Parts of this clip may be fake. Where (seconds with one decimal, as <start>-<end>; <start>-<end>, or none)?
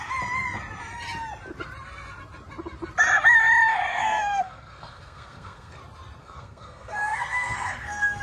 3.9-5.8; 6.2-8.2